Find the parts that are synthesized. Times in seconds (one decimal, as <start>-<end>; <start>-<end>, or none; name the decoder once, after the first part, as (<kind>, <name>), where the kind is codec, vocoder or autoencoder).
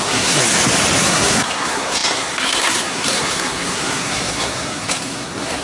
0.0-0.4 (codec, SNAC); 1.0-5.6